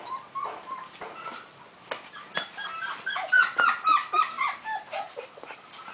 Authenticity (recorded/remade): recorded